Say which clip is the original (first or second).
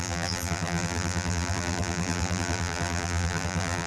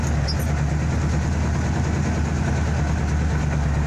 second